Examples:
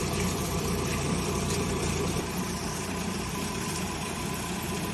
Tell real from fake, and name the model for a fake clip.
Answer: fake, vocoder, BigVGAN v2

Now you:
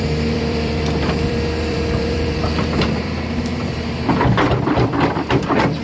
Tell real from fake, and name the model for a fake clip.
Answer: fake, vocoder, BigVGAN v2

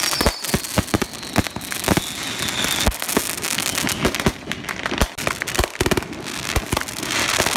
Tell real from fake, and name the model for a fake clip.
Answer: real